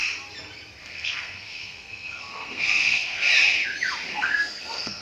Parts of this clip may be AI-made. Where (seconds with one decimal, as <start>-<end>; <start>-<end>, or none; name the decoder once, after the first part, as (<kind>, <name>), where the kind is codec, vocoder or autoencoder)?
0.8-3.2 (codec, SNAC); 4.1-5.0